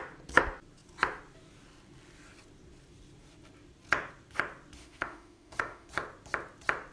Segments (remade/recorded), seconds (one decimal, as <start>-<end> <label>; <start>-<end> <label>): 0.0-4.8 recorded; 4.8-5.9 remade; 5.9-6.9 recorded